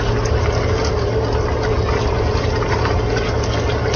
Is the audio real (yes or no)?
yes